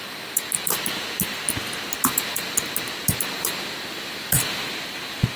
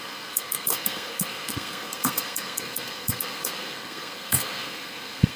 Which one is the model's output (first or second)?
second